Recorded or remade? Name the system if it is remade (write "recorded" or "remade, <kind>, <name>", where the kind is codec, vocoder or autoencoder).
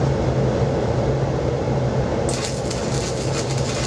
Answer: recorded